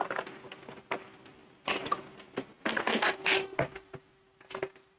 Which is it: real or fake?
real